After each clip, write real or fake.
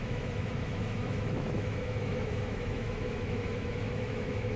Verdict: fake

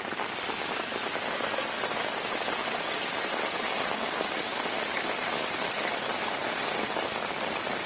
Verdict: real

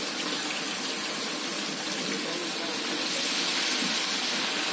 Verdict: real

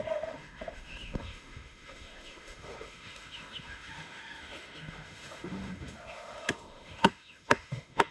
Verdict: fake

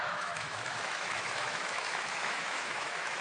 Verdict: fake